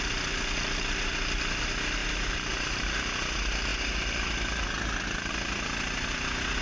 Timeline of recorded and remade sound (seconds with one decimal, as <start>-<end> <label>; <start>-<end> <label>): 0.0-6.6 recorded